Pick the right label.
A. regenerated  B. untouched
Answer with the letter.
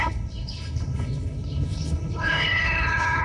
A